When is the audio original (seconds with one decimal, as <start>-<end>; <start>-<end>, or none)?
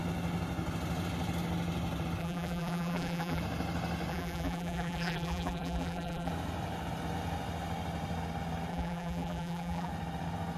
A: 0.0-2.2; 3.4-4.1; 6.3-8.7; 9.9-10.6